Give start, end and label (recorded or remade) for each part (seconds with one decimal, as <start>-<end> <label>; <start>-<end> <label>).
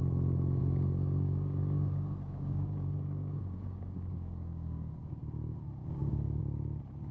0.0-0.6 recorded; 0.6-4.9 remade; 4.9-5.8 recorded; 5.8-6.4 remade; 6.4-7.1 recorded